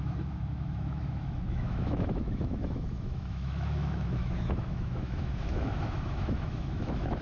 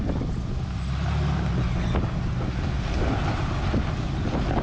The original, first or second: second